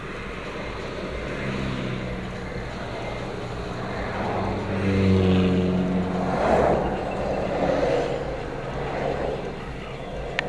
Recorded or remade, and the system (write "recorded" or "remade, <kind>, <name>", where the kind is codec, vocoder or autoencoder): recorded